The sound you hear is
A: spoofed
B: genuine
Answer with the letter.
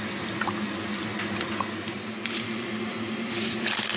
B